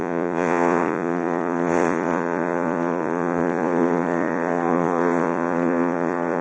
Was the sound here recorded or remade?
remade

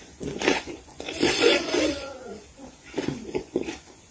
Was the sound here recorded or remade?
remade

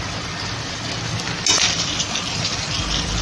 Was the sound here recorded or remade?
recorded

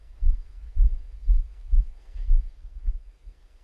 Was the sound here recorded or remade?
remade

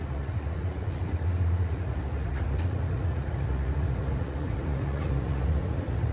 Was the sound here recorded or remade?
remade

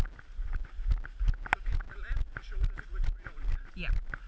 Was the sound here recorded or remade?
recorded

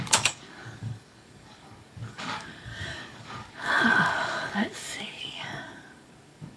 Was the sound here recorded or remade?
remade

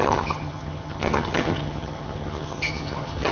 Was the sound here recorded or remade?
remade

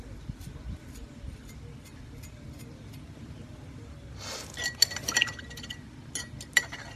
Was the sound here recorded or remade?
recorded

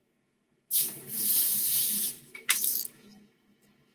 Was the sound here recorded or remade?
remade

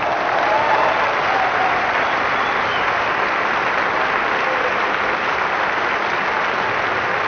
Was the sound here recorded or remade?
recorded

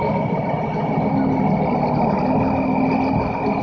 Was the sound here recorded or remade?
recorded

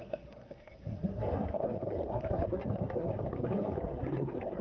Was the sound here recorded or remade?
remade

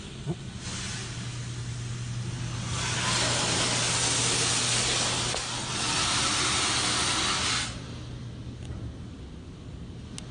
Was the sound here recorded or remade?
recorded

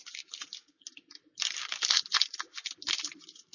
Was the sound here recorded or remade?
recorded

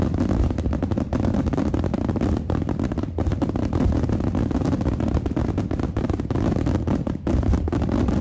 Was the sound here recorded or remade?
recorded